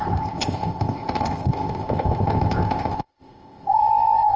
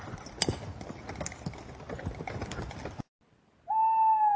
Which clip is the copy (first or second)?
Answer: first